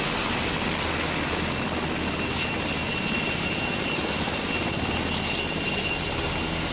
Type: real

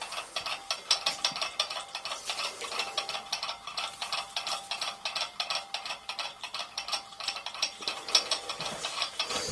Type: real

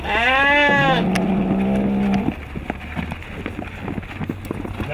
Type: real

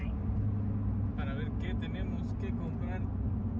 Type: real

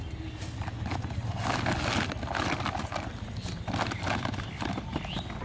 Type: real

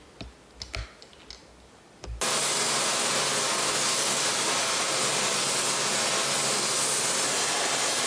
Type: real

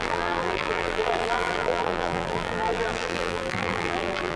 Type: fake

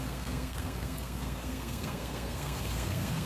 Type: fake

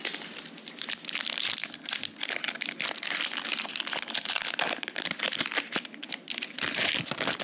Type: real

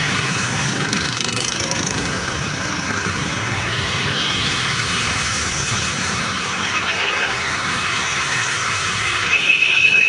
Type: fake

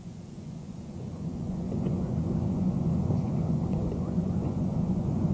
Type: fake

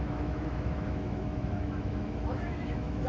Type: fake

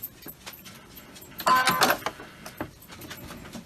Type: real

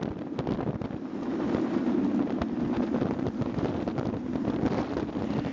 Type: real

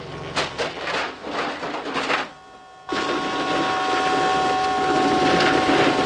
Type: real